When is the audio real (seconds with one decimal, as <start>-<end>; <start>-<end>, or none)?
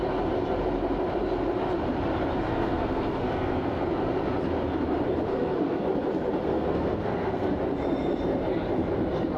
0.0-2.5; 3.8-5.3; 5.8-6.4; 7.5-9.4